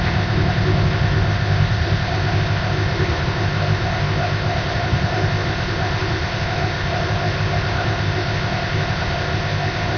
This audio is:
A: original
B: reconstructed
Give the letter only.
B